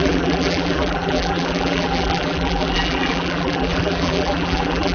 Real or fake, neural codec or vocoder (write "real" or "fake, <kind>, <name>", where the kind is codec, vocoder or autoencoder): fake, vocoder, BigVGAN v2